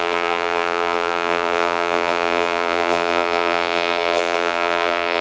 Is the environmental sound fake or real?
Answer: fake